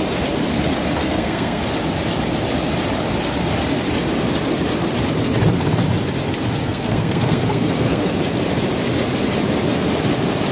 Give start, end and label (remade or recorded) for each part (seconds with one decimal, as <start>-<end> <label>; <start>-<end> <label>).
0.0-1.0 recorded; 1.0-1.6 remade; 1.6-6.6 recorded; 6.6-8.1 remade; 8.1-10.5 recorded